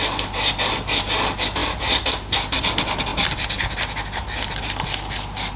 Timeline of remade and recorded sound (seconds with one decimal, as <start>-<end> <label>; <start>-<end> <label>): 0.0-5.6 recorded